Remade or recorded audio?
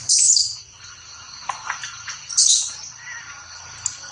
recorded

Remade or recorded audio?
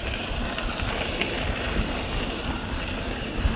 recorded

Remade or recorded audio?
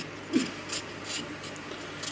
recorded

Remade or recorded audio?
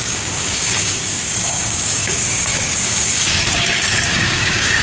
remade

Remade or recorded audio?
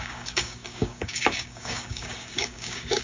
remade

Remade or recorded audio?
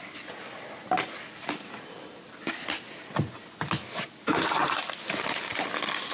recorded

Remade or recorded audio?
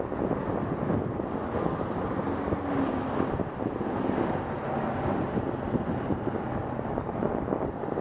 recorded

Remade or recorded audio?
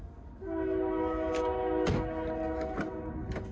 recorded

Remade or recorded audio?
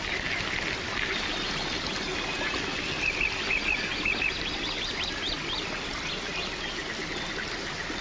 recorded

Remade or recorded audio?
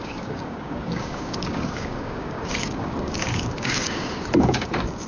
remade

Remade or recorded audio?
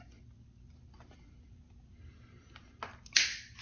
recorded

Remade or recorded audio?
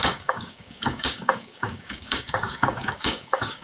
remade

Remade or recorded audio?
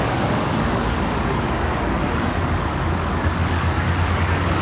remade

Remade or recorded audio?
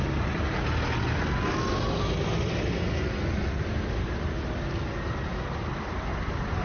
recorded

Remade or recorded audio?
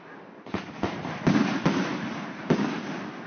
recorded